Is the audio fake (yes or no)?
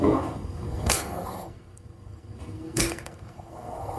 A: yes